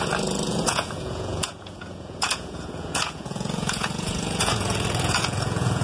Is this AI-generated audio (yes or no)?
yes